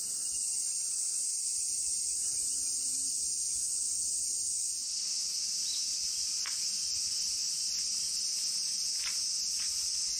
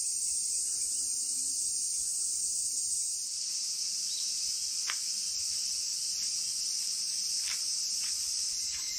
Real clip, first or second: first